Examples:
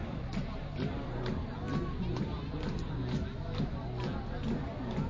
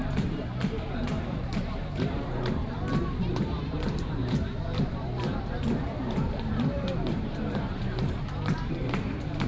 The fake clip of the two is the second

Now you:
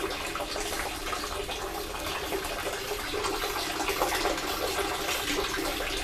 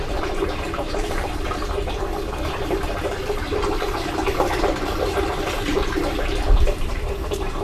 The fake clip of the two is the second